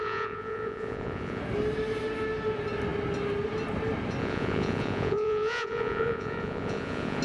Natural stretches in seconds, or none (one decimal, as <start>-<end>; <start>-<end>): 1.4-4.2

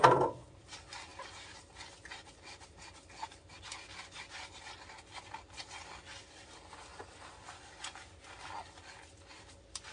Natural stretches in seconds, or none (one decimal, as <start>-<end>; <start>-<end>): 0.0-9.9

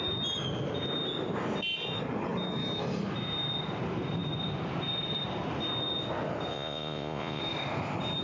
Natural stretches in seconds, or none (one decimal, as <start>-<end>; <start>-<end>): 0.0-6.5; 7.4-8.2

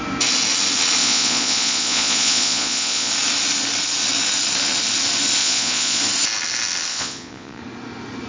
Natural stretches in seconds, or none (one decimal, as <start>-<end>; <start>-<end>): 0.0-1.0; 3.1-5.4; 6.0-6.9; 7.6-8.3

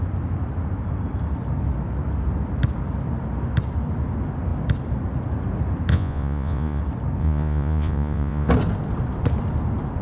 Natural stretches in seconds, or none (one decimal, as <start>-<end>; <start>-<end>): 0.0-5.9; 6.8-7.2; 8.5-10.0

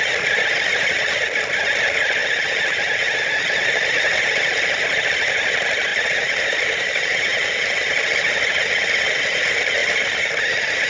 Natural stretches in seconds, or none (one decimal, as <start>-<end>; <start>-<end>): 0.0-10.9

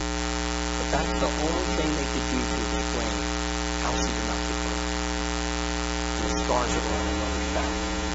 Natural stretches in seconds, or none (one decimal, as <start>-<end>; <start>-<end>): 0.0-6.9